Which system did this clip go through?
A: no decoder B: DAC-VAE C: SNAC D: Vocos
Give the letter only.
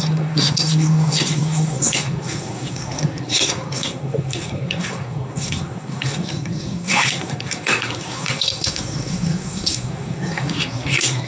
C